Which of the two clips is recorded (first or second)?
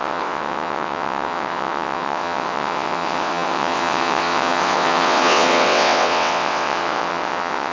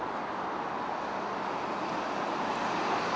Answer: second